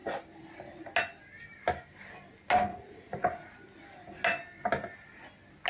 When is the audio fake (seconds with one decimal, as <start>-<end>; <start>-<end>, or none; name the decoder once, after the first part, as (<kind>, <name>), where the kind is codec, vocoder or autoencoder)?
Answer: 2.7-3.6 (vocoder, Vocos)